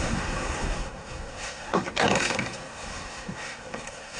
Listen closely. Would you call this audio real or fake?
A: fake